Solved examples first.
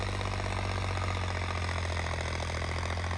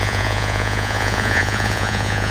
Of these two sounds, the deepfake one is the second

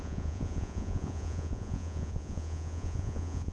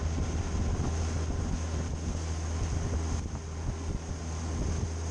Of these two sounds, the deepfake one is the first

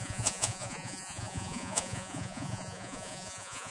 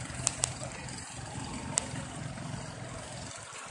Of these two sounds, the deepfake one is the first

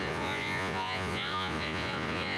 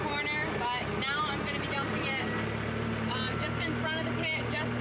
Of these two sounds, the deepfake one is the first